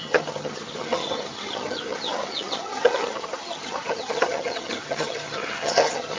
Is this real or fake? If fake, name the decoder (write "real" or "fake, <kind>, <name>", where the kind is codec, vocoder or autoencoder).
fake, vocoder, HiFi-GAN